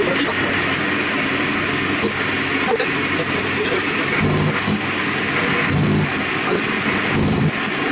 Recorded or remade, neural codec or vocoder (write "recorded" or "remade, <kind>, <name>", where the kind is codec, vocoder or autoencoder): recorded